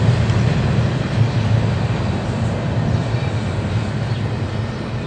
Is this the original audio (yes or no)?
yes